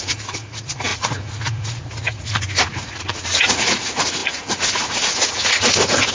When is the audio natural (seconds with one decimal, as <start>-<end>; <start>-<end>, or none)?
none

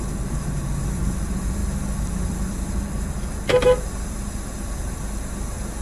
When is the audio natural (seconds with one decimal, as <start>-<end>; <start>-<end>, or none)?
0.0-5.8

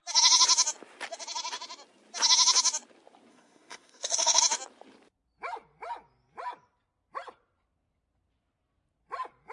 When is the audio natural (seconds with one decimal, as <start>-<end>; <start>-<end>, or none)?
0.0-3.3; 4.4-9.5